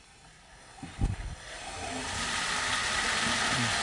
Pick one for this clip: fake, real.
real